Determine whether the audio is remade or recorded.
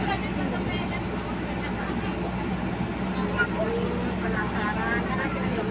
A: recorded